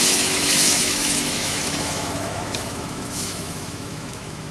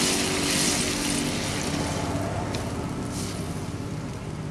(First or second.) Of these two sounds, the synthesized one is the first